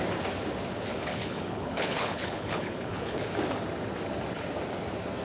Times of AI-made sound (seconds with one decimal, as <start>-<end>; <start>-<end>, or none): 0.9-3.2

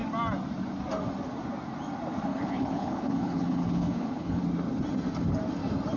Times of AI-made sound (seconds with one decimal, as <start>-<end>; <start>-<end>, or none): 2.3-4.4

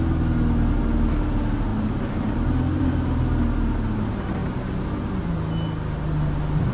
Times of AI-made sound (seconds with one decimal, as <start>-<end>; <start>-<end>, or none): none

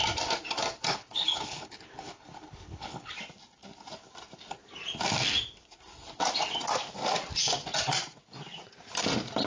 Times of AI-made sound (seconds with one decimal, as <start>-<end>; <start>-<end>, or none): 0.9-3.1

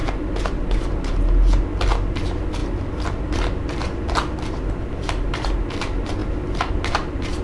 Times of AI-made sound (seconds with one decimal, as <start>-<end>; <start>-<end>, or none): none

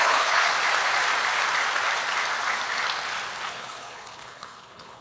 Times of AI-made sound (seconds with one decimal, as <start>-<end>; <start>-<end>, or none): 0.0-0.5; 3.5-5.0

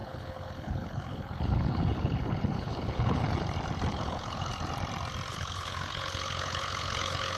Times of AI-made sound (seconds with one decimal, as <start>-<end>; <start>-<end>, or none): 0.0-3.2; 3.9-4.5; 5.3-7.4